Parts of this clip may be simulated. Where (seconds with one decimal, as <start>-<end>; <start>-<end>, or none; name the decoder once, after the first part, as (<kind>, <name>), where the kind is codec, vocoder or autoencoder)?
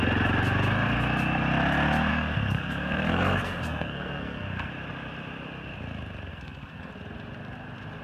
2.1-4.7 (codec, SNAC); 6.3-6.9